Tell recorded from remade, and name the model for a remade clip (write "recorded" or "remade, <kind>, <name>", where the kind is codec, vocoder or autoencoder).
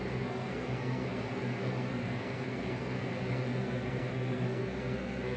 remade, codec, SNAC